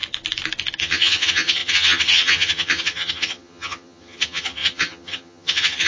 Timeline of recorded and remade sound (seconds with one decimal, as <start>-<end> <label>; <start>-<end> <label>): 0.0-0.8 recorded; 0.8-5.9 remade